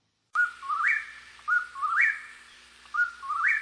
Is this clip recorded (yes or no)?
no